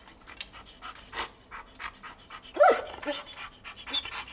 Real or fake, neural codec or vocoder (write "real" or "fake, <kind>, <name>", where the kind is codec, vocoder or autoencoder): real